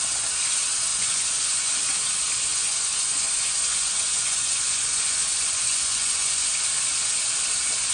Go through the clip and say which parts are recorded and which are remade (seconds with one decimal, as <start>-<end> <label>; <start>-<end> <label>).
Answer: 0.0-0.9 recorded; 0.9-1.7 remade; 1.7-2.5 recorded; 2.5-6.5 remade; 6.5-7.9 recorded

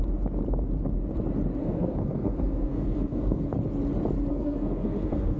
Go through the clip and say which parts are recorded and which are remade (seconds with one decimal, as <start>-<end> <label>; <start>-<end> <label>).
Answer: 0.0-1.6 recorded; 1.6-3.4 remade; 3.4-4.3 recorded; 4.3-5.4 remade

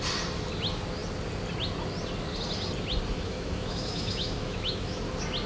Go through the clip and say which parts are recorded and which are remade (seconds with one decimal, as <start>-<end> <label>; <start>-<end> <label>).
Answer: 0.0-3.1 recorded; 3.1-5.0 remade; 5.0-5.5 recorded

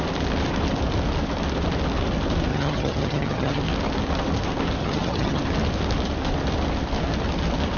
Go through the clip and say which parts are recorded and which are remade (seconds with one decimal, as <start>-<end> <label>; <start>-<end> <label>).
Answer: 0.0-2.5 recorded; 2.5-3.6 remade; 3.6-4.8 recorded; 4.8-5.4 remade; 5.4-7.8 recorded

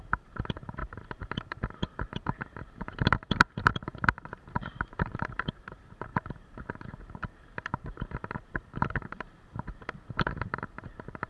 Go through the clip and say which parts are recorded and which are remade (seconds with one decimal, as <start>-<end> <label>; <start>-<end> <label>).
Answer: 0.0-11.3 remade

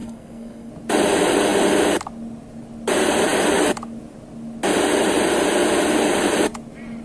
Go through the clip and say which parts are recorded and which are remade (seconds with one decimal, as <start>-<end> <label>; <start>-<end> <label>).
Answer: 0.0-0.7 remade; 0.7-7.0 recorded

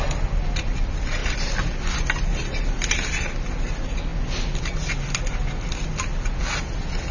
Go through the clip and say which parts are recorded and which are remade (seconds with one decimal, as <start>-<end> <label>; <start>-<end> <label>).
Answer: 0.0-7.1 recorded

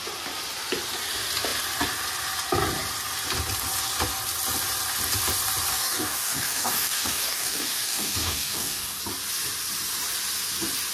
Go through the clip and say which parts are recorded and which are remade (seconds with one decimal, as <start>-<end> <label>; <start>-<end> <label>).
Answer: 0.0-5.7 recorded; 5.7-9.0 remade; 9.0-10.9 recorded